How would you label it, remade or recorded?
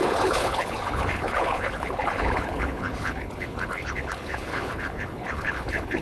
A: remade